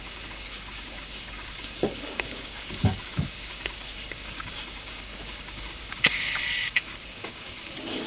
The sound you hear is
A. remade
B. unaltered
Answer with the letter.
A